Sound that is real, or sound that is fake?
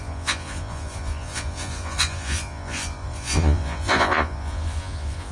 fake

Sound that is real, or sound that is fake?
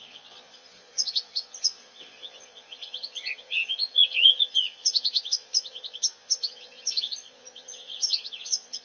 fake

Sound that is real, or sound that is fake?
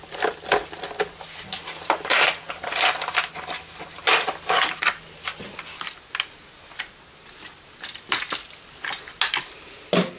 real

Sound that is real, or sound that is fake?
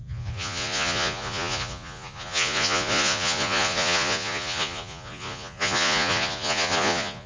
fake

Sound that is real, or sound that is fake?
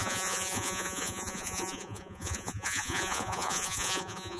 fake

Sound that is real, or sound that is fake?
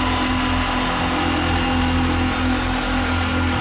real